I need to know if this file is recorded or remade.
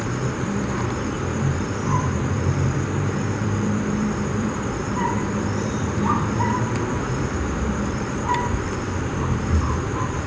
remade